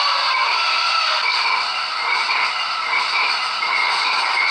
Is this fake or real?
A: fake